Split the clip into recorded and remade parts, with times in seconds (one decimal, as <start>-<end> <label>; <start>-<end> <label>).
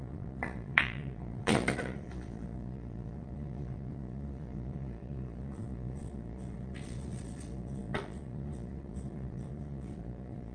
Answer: 0.0-10.5 remade